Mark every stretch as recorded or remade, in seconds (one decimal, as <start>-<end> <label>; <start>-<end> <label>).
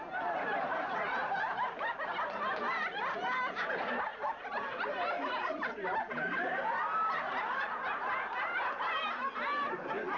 0.0-4.1 recorded; 4.1-4.9 remade; 4.9-10.2 recorded